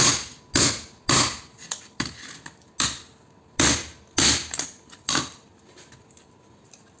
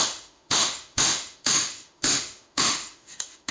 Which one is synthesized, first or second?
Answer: second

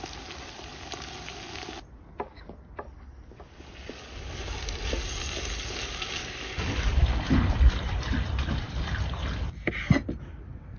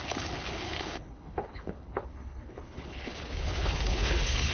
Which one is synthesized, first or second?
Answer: second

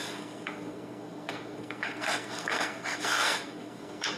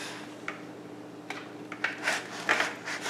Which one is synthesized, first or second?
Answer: first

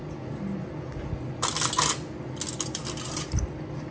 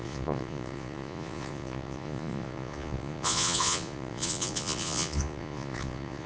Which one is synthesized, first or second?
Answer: second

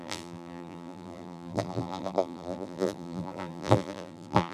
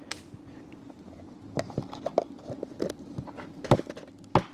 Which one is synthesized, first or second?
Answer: first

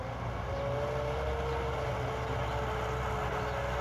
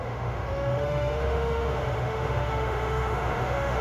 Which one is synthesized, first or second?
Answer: second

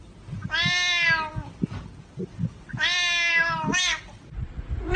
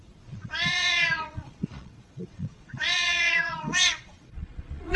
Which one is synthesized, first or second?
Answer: second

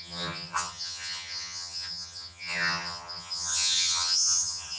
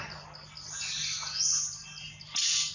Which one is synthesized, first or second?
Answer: first